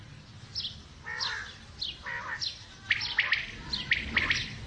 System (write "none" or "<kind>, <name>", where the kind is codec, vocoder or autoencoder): none